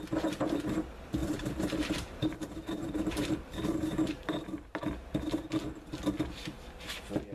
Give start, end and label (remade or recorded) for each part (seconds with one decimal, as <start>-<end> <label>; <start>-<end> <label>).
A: 0.0-1.2 recorded; 1.2-4.8 remade; 4.8-7.3 recorded